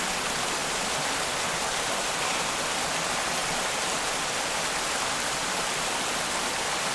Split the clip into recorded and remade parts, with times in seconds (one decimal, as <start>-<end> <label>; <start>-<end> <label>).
0.0-0.6 recorded; 0.6-2.7 remade; 2.7-3.4 recorded; 3.4-6.0 remade; 6.0-6.9 recorded